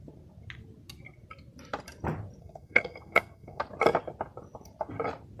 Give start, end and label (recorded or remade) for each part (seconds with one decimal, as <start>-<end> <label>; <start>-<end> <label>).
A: 0.0-2.4 recorded; 2.4-3.6 remade; 3.6-5.4 recorded

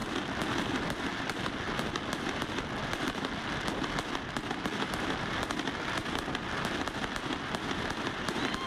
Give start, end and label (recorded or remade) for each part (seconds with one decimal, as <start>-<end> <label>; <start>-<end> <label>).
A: 0.0-4.5 recorded; 4.5-8.7 remade

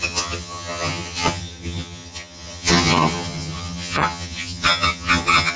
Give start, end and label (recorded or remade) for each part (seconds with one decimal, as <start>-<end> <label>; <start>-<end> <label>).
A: 0.0-5.6 remade

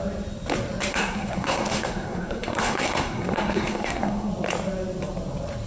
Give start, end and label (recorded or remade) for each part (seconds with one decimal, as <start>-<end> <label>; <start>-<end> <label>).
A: 0.0-0.9 recorded; 0.9-4.3 remade; 4.3-5.7 recorded

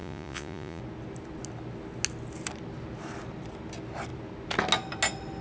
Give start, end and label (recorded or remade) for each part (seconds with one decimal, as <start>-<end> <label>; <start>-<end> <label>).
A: 0.0-0.8 remade; 0.8-5.4 recorded